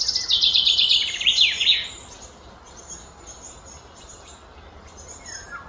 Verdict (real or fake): real